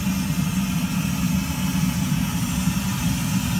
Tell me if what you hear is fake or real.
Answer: real